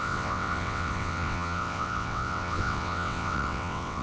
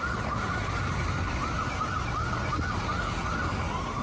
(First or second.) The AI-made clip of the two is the first